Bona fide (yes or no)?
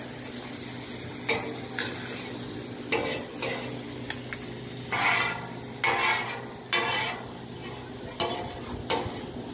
yes